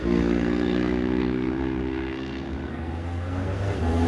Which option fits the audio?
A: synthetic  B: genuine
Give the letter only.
A